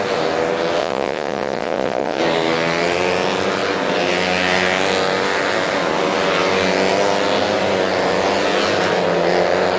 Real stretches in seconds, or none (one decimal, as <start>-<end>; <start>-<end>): 0.0-0.8; 2.2-9.8